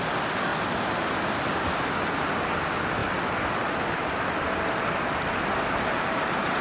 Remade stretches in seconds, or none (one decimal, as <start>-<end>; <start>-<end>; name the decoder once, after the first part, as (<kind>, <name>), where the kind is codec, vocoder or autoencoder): none